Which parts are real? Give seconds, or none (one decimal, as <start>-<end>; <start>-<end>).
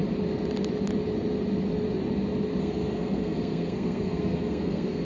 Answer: 0.0-2.6